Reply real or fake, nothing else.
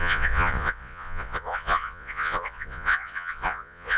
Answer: fake